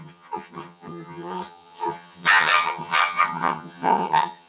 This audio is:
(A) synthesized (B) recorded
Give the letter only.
A